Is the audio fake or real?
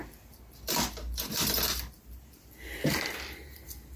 real